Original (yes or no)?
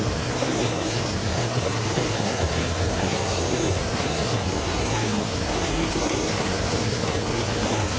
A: no